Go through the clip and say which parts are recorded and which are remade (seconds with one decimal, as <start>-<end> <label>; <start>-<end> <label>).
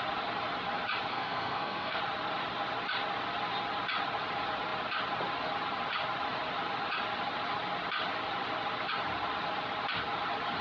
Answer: 0.0-1.1 recorded; 1.1-2.0 remade; 2.0-10.6 recorded